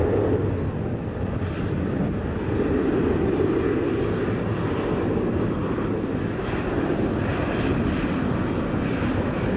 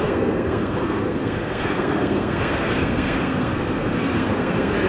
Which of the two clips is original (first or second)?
first